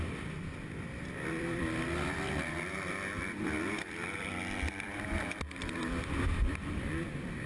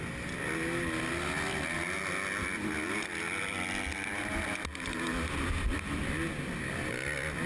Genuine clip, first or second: second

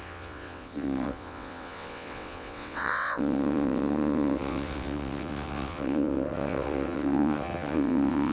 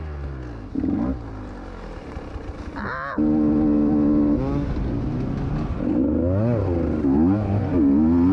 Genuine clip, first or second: second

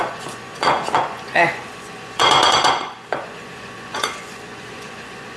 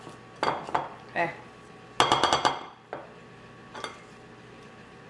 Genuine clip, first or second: second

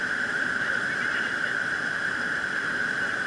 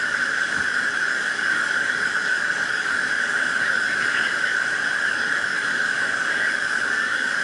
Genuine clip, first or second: first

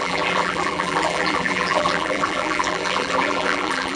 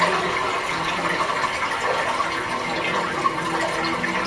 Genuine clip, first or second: second